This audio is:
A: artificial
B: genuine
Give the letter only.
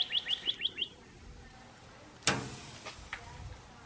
B